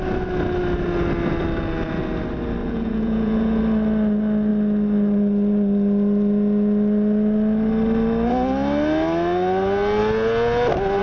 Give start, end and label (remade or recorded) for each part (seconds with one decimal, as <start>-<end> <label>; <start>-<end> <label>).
0.0-2.6 recorded; 2.6-3.6 remade; 3.6-11.0 recorded

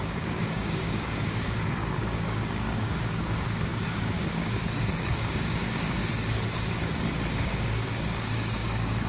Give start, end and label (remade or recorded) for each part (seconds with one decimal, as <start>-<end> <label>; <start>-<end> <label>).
0.0-6.0 remade; 6.0-7.3 recorded; 7.3-9.1 remade